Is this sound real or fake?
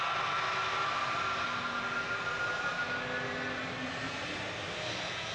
real